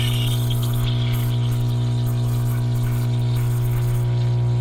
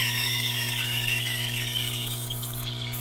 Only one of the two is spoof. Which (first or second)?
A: second